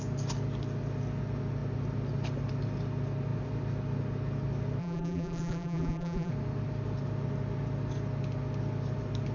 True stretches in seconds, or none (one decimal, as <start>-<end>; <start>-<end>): 0.0-4.8; 6.3-9.3